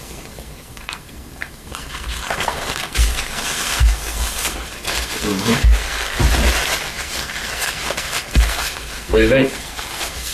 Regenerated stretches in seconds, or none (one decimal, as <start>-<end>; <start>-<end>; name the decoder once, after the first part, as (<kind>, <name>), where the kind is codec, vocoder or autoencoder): 0.0-6.2 (codec, SNAC); 6.8-10.3